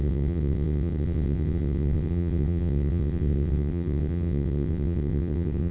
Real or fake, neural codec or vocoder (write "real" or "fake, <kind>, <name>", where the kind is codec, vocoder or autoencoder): fake, vocoder, WaveNeXt